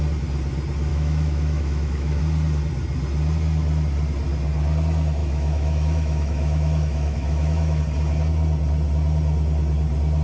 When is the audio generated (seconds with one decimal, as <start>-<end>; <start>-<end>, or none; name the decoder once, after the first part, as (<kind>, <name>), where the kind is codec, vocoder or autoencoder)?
0.9-2.2 (autoencoder, DAC-VAE); 5.2-7.8

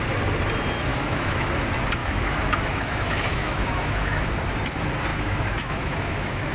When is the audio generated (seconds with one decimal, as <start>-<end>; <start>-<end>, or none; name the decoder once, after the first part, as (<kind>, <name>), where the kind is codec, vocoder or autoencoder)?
0.9-1.5 (autoencoder, DAC-VAE); 2.0-4.3; 5.1-6.5